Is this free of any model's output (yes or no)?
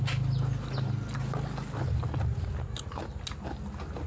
yes